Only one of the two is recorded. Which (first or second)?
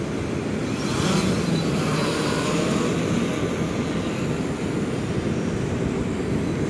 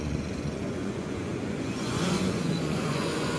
first